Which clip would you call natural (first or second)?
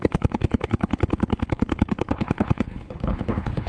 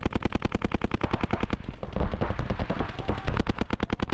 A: second